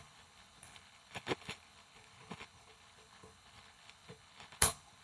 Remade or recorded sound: remade